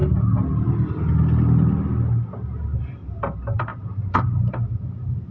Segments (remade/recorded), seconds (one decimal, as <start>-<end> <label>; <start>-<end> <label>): 0.0-2.8 recorded; 2.8-5.3 remade